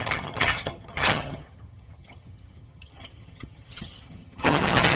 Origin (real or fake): fake